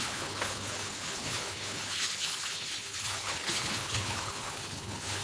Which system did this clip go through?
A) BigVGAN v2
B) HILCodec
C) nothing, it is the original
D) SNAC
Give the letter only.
B